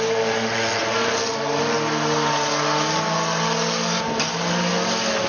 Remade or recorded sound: recorded